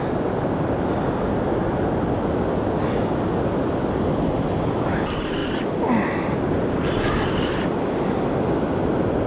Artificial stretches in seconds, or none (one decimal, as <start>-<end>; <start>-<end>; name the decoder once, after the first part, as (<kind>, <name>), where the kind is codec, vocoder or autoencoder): none